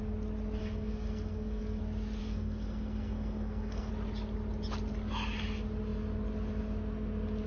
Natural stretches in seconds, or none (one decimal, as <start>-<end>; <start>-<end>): 0.0-0.6; 1.8-2.2; 3.9-7.5